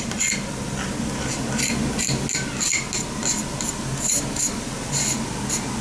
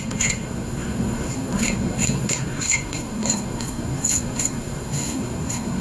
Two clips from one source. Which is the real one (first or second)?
first